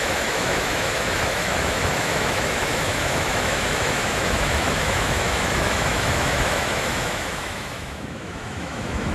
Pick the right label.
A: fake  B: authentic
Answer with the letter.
A